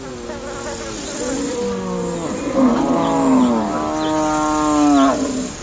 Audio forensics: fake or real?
real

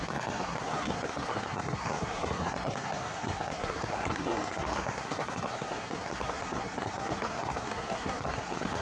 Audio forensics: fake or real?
fake